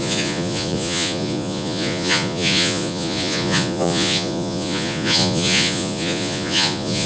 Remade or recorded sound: remade